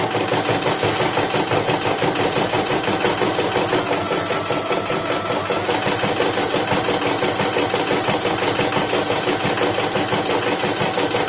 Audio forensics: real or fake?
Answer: real